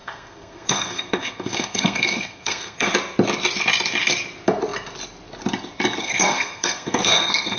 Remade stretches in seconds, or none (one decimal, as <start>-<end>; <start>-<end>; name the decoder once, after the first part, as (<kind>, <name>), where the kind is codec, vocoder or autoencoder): 0.0-2.9 (codec, SNAC); 6.0-7.6